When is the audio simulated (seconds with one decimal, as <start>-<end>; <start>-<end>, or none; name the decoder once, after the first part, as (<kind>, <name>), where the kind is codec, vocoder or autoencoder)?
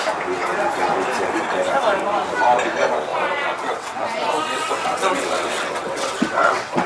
3.1-6.9 (vocoder, WaveNeXt)